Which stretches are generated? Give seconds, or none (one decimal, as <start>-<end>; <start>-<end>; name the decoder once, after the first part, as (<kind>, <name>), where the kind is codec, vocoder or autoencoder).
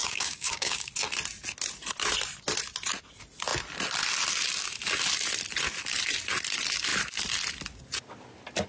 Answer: 0.0-0.9 (codec, DAC)